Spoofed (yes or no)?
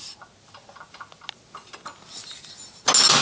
no